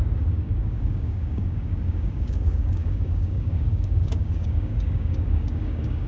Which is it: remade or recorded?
remade